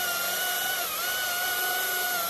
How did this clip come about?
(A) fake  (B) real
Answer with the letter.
B